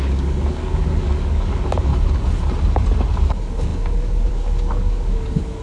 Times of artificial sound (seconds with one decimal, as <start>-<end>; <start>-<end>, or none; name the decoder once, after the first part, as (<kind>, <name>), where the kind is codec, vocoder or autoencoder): 0.0-1.9 (codec, DAC); 3.1-5.6